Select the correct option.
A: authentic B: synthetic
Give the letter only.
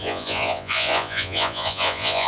B